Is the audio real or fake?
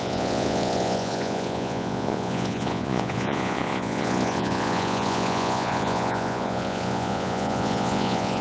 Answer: fake